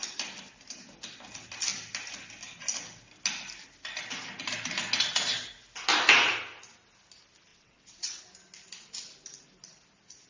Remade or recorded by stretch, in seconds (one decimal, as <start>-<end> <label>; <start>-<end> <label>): 0.0-7.5 recorded; 7.5-8.2 remade; 8.2-10.3 recorded